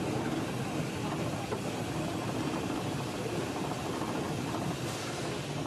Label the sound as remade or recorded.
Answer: recorded